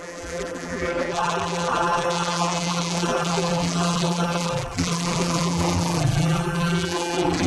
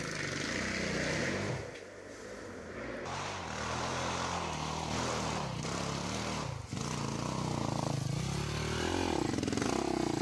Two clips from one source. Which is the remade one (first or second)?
first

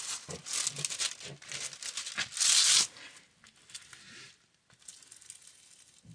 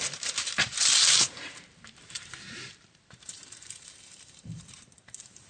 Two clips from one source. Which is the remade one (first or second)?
second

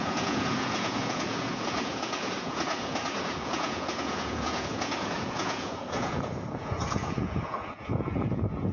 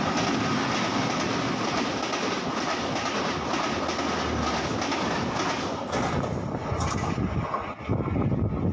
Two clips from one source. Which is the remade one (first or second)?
first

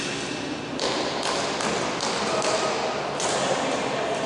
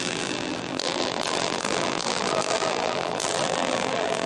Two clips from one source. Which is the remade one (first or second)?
second